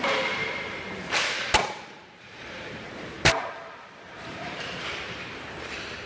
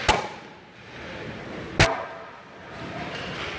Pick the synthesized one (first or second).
first